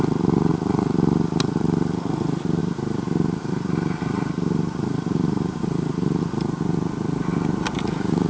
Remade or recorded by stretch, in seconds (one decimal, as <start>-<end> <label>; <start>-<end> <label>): 0.0-2.6 recorded; 2.6-6.2 remade; 6.2-8.3 recorded